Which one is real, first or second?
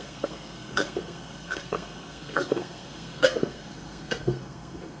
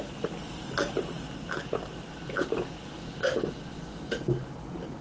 second